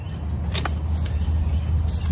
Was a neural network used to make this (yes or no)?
no